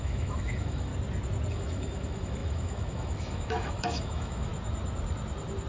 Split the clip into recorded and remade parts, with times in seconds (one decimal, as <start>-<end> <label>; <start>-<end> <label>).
0.0-0.9 remade; 0.9-1.5 recorded; 1.5-4.5 remade; 4.5-5.7 recorded